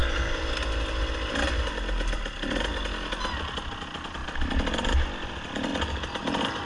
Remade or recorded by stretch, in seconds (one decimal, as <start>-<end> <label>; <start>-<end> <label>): 0.0-6.7 recorded